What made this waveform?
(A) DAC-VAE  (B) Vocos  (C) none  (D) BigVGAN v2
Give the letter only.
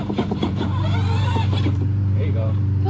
D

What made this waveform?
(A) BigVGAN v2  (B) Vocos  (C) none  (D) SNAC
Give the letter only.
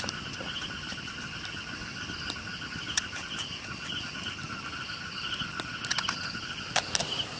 C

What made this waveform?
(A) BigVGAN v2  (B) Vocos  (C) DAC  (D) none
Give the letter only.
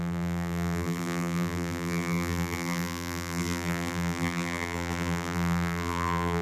A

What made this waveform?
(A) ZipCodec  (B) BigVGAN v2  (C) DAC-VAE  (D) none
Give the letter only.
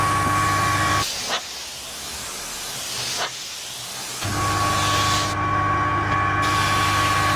D